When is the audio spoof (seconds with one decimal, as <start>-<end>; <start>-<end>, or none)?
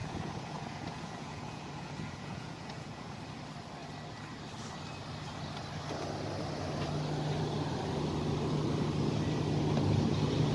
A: 0.0-3.2